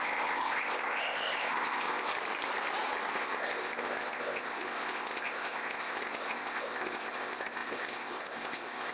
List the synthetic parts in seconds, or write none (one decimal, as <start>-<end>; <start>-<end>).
0.0-2.1; 3.1-8.9